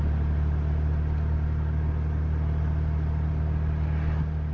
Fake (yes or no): no